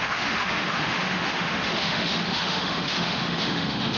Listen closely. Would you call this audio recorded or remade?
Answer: remade